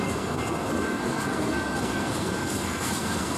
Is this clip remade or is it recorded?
remade